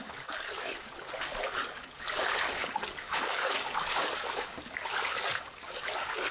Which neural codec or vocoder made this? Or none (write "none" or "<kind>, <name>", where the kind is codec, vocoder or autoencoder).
codec, DAC